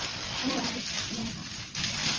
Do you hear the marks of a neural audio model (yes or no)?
no